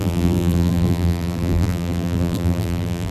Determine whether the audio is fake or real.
fake